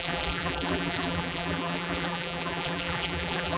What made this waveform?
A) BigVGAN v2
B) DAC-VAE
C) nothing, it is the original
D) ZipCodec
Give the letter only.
A